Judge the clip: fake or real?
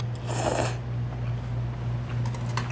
real